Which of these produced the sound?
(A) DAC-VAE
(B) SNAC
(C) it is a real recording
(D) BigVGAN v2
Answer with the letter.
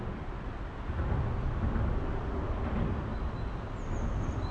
C